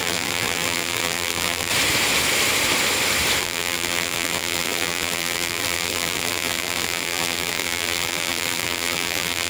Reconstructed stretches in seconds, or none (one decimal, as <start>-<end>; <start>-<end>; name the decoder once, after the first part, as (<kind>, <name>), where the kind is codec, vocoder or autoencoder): 0.0-1.7 (vocoder, BigVGAN v2); 3.4-9.5